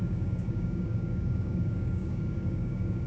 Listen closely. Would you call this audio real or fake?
fake